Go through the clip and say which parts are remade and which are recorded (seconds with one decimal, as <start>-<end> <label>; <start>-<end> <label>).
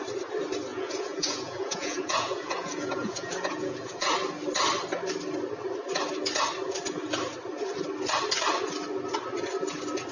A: 0.0-0.7 recorded; 0.7-4.1 remade; 4.1-10.1 recorded